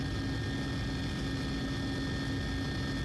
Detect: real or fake real